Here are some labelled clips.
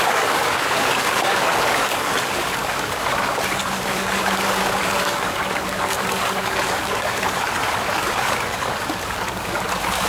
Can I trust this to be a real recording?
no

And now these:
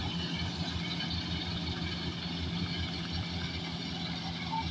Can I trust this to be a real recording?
yes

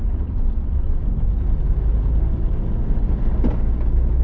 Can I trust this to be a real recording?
yes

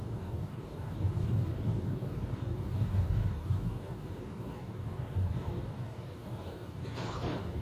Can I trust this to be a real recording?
no